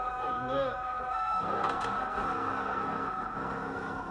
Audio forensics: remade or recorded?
remade